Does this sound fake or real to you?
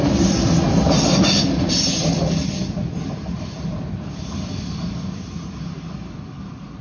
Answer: real